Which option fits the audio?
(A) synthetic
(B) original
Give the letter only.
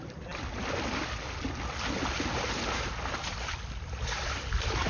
B